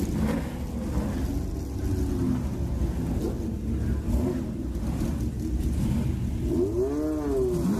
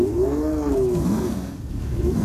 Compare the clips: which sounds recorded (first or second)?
first